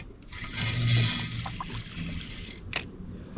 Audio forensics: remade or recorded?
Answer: recorded